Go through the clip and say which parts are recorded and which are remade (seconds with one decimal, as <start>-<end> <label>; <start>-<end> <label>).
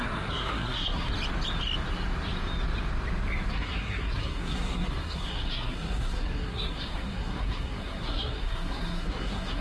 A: 0.0-1.1 remade; 1.1-3.5 recorded; 3.5-9.6 remade